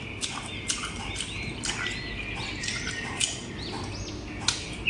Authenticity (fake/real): real